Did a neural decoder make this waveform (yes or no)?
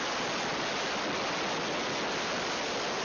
no